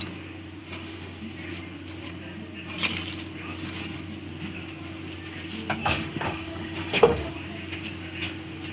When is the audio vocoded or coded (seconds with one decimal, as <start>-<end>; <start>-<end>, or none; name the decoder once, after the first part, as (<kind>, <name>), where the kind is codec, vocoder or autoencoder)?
0.6-1.2 (autoencoder, DAC-VAE); 5.8-7.3